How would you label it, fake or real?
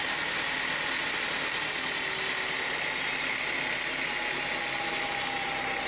real